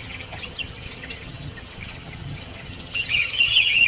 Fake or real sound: fake